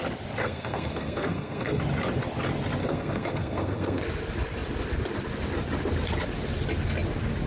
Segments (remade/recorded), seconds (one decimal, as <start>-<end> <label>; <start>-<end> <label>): 0.0-0.4 recorded; 0.4-1.8 remade; 1.8-2.8 recorded; 2.8-4.0 remade; 4.0-7.5 recorded